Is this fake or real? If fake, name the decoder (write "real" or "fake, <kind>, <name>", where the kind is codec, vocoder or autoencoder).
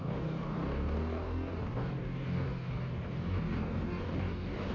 fake, codec, DAC